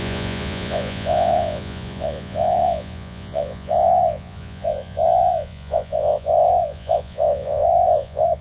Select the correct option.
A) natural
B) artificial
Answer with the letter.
B